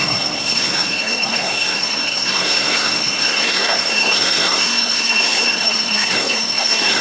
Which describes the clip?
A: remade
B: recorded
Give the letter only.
A